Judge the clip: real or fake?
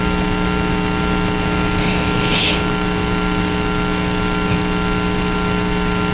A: real